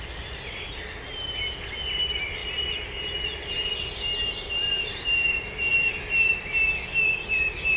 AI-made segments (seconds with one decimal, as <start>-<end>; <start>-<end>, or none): none

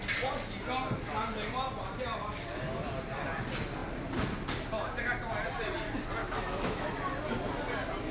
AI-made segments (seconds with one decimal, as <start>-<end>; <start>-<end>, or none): 6.2-6.9

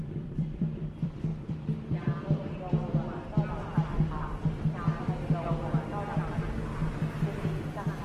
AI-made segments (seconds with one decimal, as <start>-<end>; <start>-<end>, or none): 0.0-3.0

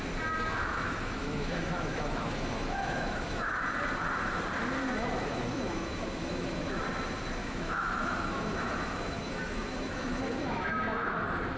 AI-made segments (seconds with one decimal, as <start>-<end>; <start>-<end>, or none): 0.6-3.6; 4.8-6.8; 7.4-11.2

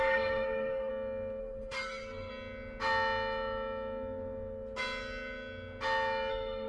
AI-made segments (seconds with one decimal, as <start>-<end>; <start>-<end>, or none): 0.0-0.9; 1.4-2.3; 6.3-6.7

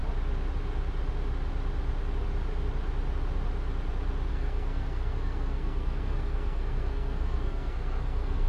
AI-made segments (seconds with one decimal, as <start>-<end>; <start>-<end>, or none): 4.3-8.5

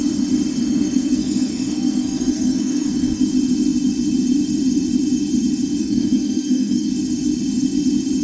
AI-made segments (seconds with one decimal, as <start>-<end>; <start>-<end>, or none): 0.6-3.2; 5.8-6.9

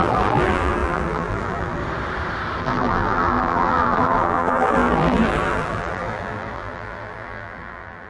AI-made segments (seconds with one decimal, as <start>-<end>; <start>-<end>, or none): 0.0-1.8; 2.6-8.1